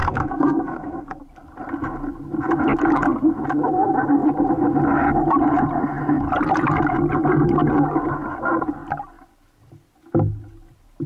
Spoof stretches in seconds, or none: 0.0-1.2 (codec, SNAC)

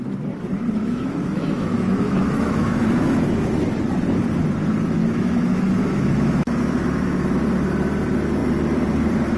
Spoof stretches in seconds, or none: 0.8-3.5 (autoencoder, DAC-VAE); 5.0-7.4

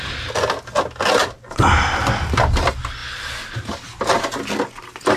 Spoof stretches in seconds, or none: none